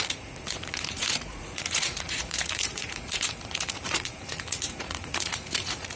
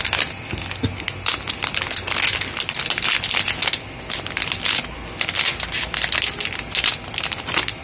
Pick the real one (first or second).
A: second